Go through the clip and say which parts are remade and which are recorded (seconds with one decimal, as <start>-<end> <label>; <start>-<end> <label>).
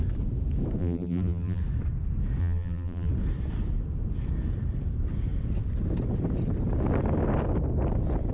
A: 0.0-0.8 recorded; 0.8-1.6 remade; 1.6-2.4 recorded; 2.4-3.1 remade; 3.1-8.3 recorded